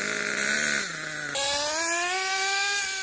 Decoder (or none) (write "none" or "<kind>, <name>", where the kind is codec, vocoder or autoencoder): none